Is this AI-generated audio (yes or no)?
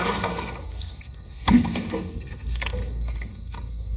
yes